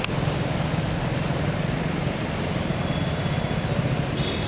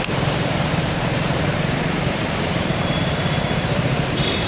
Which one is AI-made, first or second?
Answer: second